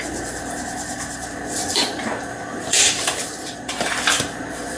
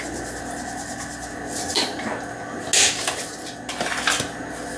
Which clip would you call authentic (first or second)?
second